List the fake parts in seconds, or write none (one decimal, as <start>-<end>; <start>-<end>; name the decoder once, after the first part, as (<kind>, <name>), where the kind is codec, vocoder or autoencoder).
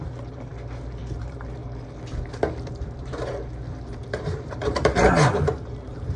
0.0-0.5 (vocoder, BigVGAN v2); 1.2-1.6; 2.7-3.3; 4.1-6.2